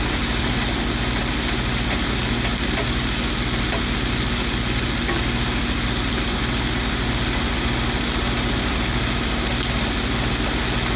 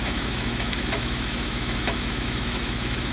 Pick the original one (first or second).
first